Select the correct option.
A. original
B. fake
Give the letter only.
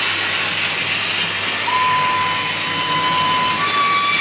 A